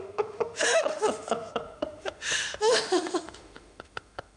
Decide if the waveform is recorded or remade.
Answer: remade